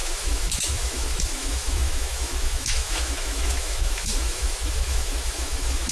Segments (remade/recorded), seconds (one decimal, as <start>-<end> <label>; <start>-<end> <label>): 0.0-5.9 remade